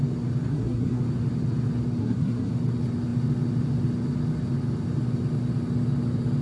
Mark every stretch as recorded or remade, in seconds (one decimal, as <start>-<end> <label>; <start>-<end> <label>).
0.0-0.5 recorded; 0.5-1.0 remade; 1.0-2.0 recorded; 2.0-2.5 remade; 2.5-6.4 recorded